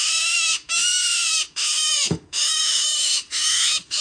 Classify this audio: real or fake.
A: fake